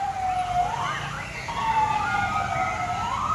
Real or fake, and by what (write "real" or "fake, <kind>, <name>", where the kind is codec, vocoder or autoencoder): real